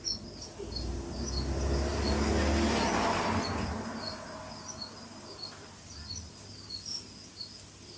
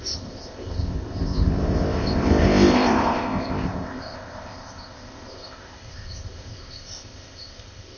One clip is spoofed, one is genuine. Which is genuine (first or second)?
first